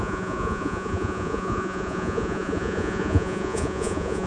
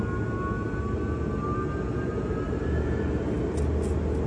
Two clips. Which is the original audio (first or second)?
second